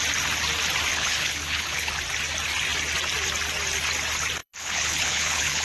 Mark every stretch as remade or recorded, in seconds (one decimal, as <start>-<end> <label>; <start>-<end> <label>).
0.0-0.9 recorded; 0.9-1.9 remade; 1.9-4.4 recorded; 4.4-5.6 remade